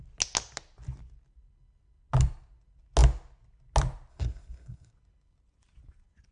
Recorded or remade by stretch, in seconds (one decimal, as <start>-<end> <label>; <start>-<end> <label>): 0.0-4.1 recorded; 4.1-4.9 remade; 4.9-6.3 recorded